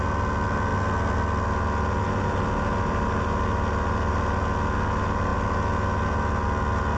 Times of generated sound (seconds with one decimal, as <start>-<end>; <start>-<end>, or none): none